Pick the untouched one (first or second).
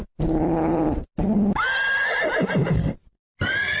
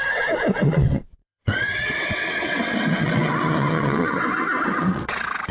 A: first